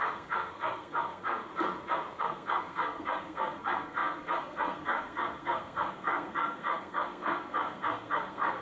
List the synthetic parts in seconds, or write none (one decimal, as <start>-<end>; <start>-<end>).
0.0-1.5; 2.2-8.6

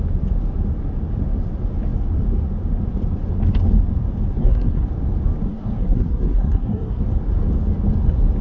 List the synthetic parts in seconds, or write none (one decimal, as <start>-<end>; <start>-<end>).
4.4-4.9; 5.5-7.0

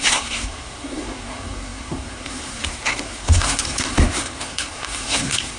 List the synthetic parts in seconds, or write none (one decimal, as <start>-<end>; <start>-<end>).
0.0-5.6

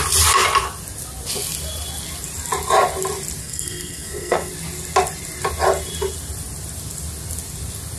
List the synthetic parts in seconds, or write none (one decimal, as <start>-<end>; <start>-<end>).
3.4-4.5

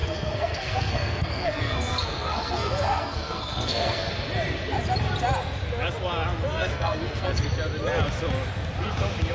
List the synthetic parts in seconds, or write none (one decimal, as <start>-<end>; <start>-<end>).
0.0-4.1; 6.4-7.4

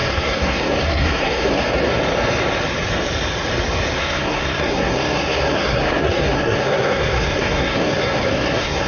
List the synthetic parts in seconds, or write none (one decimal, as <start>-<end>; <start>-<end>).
0.0-1.6; 4.0-8.9

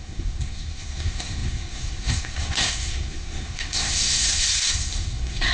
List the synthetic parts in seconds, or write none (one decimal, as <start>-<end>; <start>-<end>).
0.0-5.5